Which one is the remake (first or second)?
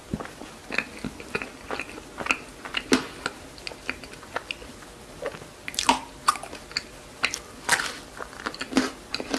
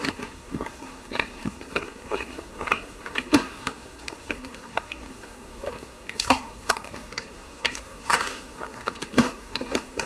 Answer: second